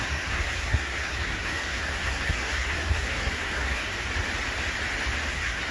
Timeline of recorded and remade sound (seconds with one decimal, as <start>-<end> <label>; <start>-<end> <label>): 0.0-3.9 remade; 3.9-5.3 recorded; 5.3-5.7 remade